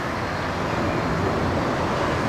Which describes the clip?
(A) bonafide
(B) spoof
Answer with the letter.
A